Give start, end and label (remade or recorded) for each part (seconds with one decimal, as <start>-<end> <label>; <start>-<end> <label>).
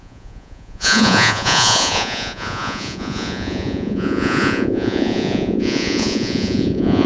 0.0-7.1 remade